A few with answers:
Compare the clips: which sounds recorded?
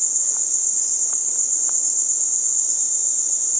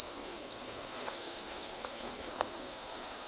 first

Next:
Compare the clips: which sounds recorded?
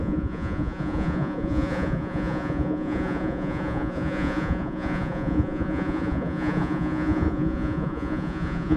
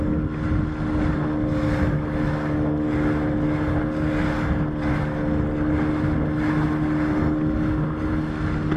second